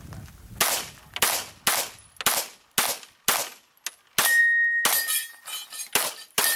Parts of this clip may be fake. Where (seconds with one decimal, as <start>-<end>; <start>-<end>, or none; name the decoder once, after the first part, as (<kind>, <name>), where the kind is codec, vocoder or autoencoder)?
none